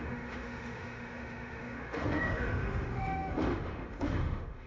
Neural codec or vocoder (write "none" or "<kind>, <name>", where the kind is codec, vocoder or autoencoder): autoencoder, DAC-VAE